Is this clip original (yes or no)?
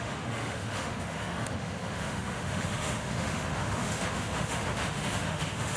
no